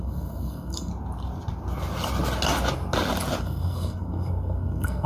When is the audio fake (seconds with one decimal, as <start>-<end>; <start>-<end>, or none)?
0.0-0.9; 3.4-5.1